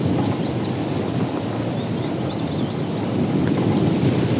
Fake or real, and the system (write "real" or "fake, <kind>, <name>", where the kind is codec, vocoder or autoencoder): real